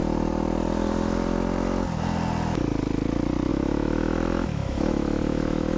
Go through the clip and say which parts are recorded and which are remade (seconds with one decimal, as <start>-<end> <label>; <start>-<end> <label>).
0.0-3.5 recorded; 3.5-5.8 remade